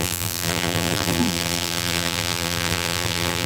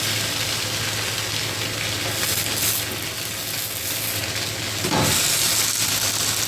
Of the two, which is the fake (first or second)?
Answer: first